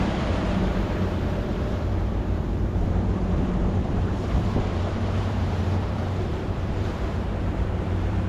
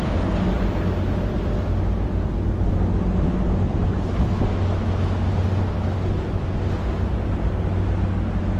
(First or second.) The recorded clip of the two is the second